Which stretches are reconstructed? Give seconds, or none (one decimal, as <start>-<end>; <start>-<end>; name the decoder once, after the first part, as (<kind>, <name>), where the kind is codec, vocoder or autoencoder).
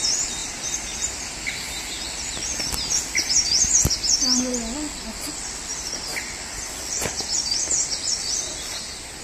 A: 0.4-2.0 (vocoder, BigVGAN v2)